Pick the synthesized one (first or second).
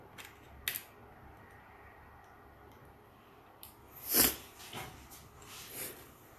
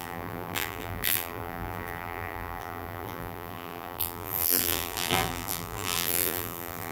second